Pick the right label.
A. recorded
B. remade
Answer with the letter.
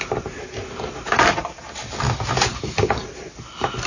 A